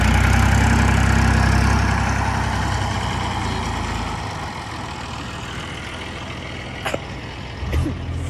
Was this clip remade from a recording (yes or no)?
no